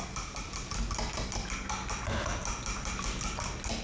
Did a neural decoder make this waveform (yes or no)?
no